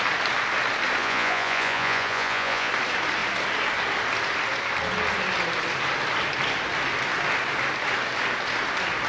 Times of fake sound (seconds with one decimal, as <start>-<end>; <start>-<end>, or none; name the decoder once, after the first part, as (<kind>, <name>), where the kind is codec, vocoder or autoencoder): 1.0-2.7 (vocoder, Vocos)